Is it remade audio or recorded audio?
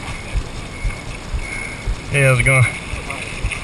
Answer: recorded